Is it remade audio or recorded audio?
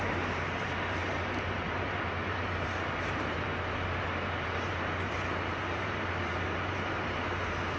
remade